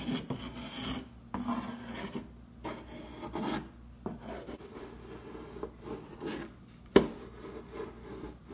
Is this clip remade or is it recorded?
recorded